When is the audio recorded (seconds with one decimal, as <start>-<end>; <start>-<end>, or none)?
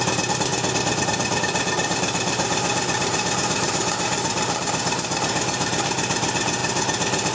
0.5-1.0; 6.6-7.3